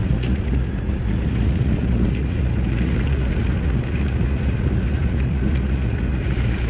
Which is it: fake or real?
fake